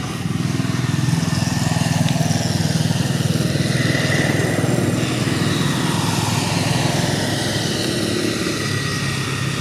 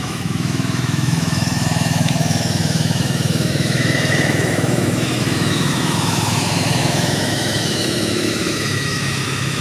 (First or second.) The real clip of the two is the first